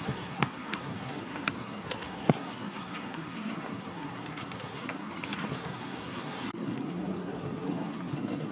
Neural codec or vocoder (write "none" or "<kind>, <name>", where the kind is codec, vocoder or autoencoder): codec, SNAC